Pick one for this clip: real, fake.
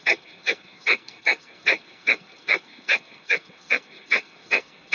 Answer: fake